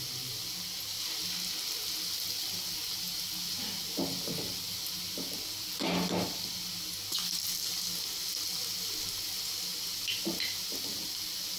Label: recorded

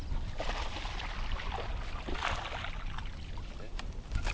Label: recorded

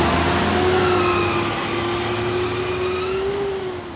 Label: recorded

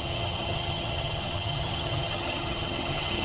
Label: remade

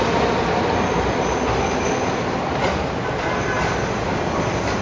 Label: recorded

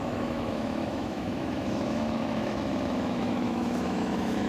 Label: remade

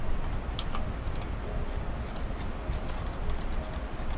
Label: recorded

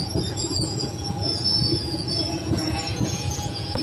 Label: remade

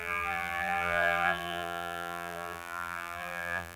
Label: remade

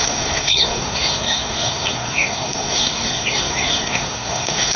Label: remade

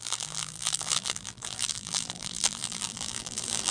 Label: remade